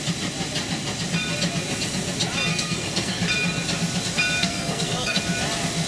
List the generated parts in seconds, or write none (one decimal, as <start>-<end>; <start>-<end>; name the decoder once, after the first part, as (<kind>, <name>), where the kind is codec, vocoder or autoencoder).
2.5-3.2 (codec, SNAC); 4.4-5.2